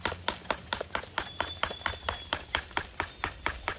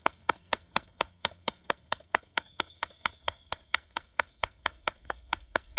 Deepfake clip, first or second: second